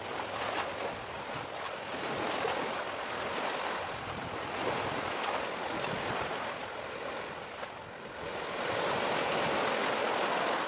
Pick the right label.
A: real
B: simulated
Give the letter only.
A